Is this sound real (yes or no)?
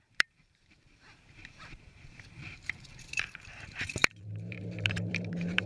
no